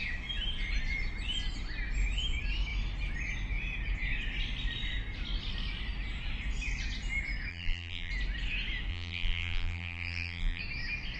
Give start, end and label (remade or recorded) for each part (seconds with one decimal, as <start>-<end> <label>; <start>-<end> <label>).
0.0-7.5 recorded; 7.5-8.1 remade; 8.1-8.9 recorded; 8.9-10.6 remade; 10.6-11.2 recorded